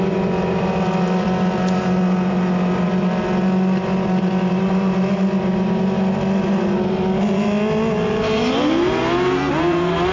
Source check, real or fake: real